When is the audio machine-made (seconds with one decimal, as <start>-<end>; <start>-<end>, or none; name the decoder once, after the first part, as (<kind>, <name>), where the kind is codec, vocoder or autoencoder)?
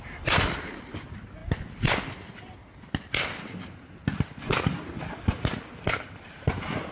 none